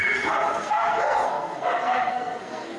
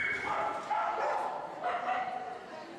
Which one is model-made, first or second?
first